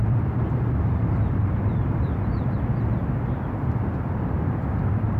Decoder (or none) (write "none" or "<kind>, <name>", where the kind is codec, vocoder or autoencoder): vocoder, BigVGAN v2